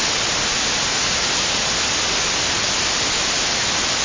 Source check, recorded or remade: recorded